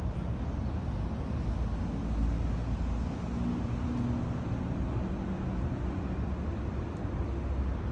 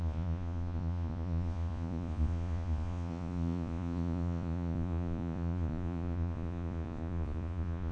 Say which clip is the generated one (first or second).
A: second